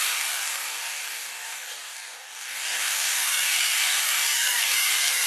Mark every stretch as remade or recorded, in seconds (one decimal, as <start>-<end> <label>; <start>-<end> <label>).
0.0-5.3 remade